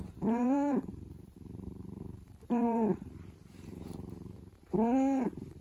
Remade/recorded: remade